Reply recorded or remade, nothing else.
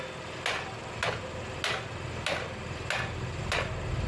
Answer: recorded